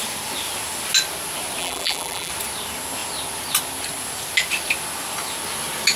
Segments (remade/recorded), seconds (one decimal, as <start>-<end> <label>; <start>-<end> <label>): 0.0-1.6 recorded; 1.6-2.3 remade; 2.3-6.0 recorded